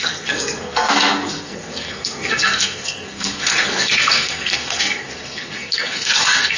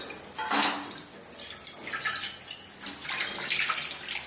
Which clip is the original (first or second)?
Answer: second